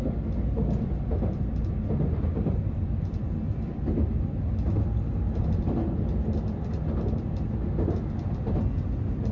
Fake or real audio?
real